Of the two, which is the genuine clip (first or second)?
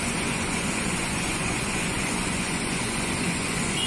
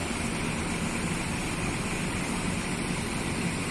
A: second